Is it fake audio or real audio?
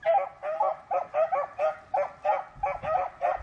real